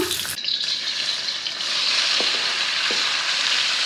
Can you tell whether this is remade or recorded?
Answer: remade